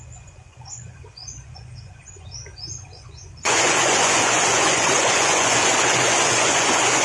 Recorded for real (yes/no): no